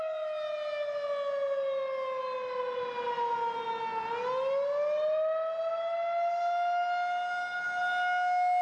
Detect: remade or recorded recorded